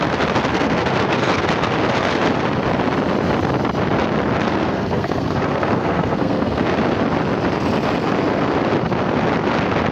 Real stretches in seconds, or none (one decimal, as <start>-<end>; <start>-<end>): 0.0-0.5; 1.4-4.5; 6.8-9.9